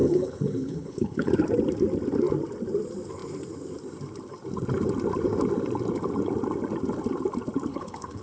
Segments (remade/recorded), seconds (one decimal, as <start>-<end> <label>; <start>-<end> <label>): 0.0-1.3 remade; 1.3-7.7 recorded; 7.7-8.2 remade